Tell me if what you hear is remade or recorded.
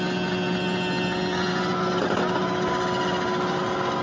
recorded